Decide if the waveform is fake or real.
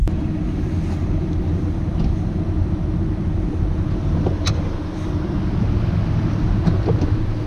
real